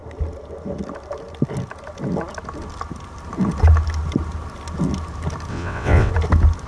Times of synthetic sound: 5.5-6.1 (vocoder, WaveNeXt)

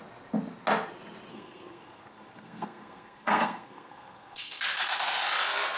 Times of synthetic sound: 1.3-4.6 (codec, SNAC)

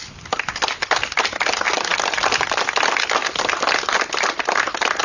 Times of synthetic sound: none

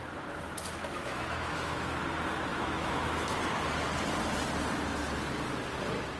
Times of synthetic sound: 0.8-2.0 (autoencoder, DAC-VAE); 2.5-3.4

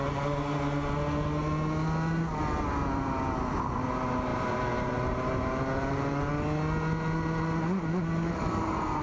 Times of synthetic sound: 4.3-6.3 (vocoder, BigVGAN v2)

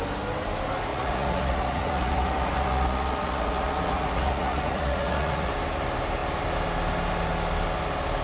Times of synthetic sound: 0.9-5.5 (vocoder, Vocos)

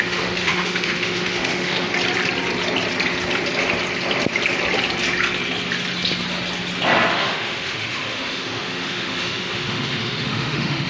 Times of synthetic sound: 0.0-1.9 (autoencoder, DAC-VAE); 7.1-10.9